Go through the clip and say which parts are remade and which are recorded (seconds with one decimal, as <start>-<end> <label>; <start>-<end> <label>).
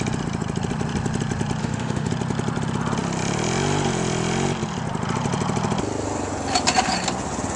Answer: 0.0-1.6 recorded; 1.6-2.1 remade; 2.1-7.6 recorded